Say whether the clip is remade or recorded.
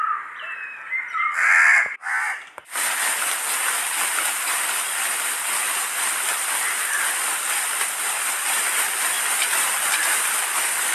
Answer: recorded